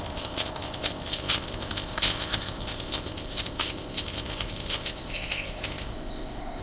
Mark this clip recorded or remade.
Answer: remade